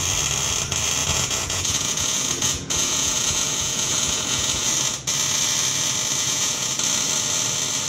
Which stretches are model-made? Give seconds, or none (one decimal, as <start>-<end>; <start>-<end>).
1.0-4.7; 6.2-6.7